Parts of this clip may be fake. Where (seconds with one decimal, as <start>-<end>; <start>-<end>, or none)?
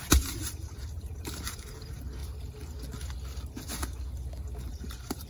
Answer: 0.0-2.2; 4.7-5.3